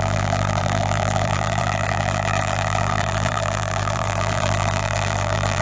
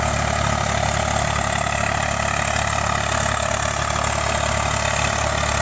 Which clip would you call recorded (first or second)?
second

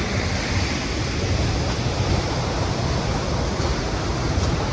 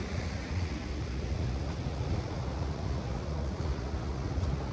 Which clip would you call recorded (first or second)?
first